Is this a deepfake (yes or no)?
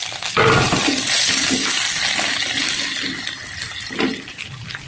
no